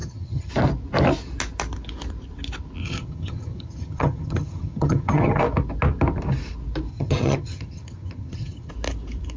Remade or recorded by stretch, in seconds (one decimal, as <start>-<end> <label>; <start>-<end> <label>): 0.0-0.5 remade; 0.5-2.8 recorded; 2.8-5.4 remade; 5.4-6.9 recorded; 6.9-8.7 remade; 8.7-9.4 recorded

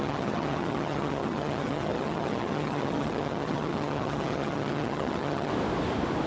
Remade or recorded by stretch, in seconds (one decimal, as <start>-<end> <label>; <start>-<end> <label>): 0.0-5.5 remade; 5.5-6.3 recorded

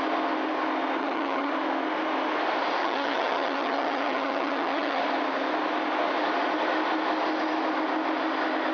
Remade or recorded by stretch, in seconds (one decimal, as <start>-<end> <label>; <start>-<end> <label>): 0.0-1.0 recorded; 1.0-1.5 remade; 1.5-2.8 recorded; 2.8-5.0 remade; 5.0-8.7 recorded

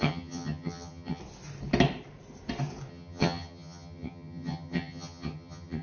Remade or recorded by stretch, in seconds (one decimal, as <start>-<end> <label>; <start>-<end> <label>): 0.0-1.2 remade; 1.2-2.9 recorded; 2.9-5.8 remade

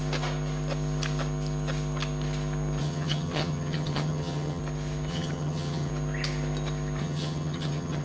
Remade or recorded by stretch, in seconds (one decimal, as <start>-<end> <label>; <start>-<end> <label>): 0.0-2.8 recorded; 2.8-4.6 remade; 4.6-5.1 recorded; 5.1-5.9 remade; 5.9-7.0 recorded; 7.0-8.0 remade

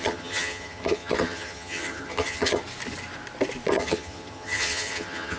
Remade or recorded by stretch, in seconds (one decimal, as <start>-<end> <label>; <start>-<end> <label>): 0.0-2.6 remade; 2.6-3.7 recorded; 3.7-5.4 remade